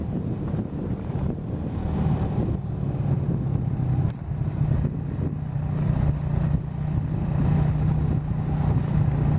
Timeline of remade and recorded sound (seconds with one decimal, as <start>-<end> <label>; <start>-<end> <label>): 0.0-1.5 remade; 1.5-9.4 recorded